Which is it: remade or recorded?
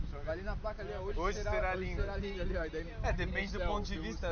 recorded